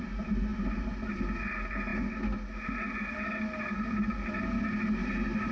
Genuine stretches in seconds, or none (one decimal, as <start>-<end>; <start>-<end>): 0.0-5.5